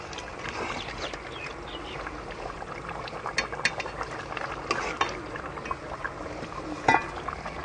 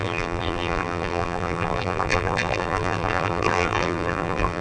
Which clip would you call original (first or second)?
first